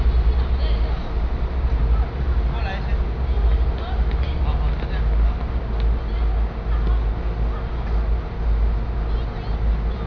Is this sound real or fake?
real